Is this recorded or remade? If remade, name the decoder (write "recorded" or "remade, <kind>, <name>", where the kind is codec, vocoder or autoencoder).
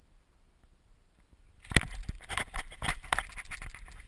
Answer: remade, vocoder, BigVGAN v2